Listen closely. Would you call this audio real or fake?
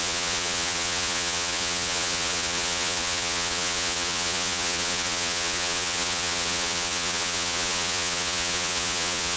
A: fake